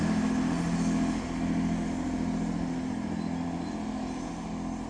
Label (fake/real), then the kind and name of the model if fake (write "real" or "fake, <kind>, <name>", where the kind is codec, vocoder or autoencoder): real